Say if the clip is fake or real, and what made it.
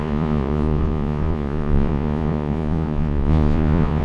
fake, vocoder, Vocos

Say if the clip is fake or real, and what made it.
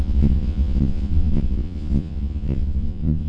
fake, vocoder, Vocos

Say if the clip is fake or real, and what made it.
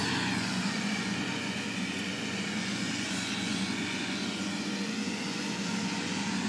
fake, vocoder, Vocos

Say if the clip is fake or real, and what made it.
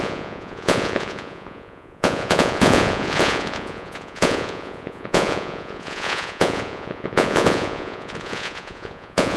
fake, vocoder, Vocos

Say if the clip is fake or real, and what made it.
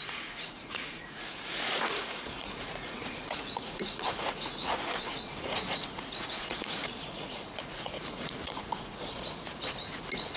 fake, vocoder, Vocos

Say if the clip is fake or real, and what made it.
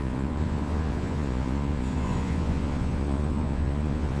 fake, vocoder, Vocos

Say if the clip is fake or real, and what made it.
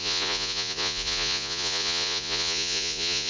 fake, vocoder, Vocos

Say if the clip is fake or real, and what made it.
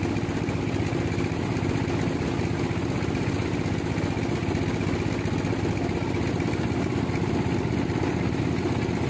real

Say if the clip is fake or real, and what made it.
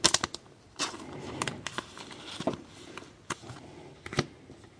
real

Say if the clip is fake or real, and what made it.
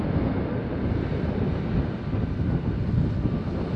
real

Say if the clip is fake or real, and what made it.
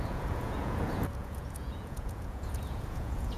fake, vocoder, Vocos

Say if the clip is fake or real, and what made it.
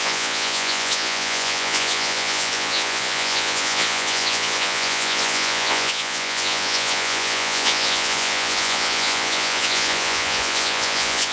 fake, vocoder, Vocos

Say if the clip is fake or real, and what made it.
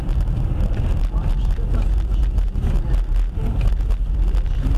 real